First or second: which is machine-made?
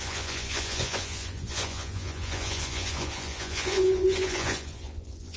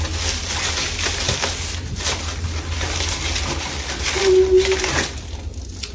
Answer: first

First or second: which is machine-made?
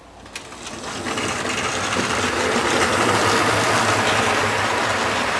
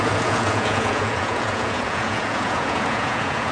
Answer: second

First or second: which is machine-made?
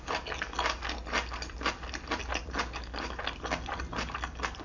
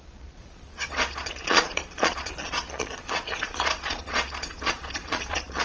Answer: second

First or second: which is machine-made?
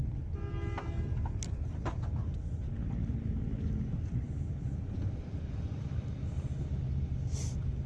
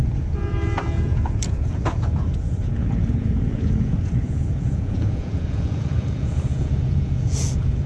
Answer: second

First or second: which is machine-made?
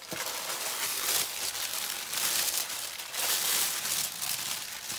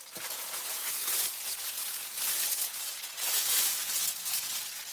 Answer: second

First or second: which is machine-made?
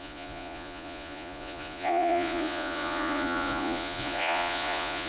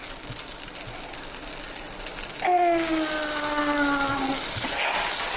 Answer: first